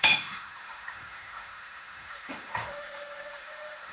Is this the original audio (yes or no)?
no